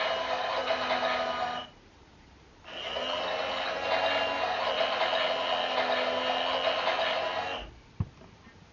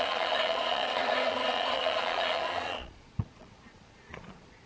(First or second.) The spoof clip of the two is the second